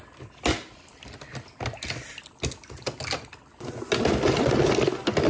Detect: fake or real real